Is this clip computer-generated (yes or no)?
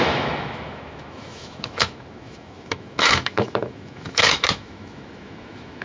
yes